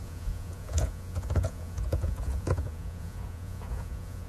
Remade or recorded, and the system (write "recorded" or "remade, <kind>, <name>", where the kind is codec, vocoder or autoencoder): remade, vocoder, Vocos